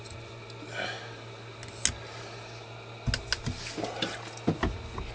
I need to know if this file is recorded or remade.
recorded